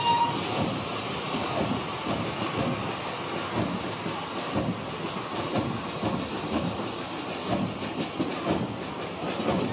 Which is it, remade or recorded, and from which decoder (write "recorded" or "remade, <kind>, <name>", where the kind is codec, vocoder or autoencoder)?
recorded